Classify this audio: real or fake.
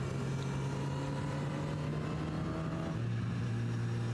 real